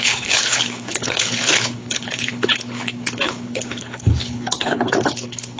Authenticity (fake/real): fake